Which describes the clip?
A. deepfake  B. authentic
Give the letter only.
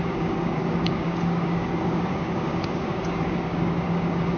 A